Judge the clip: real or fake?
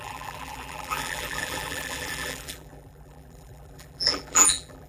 fake